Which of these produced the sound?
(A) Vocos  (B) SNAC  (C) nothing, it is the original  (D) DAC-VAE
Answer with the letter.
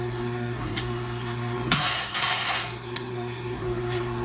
B